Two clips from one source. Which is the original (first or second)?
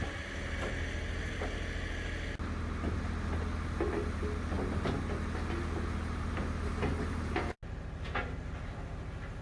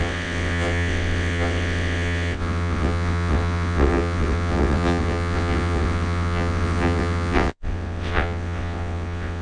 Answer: first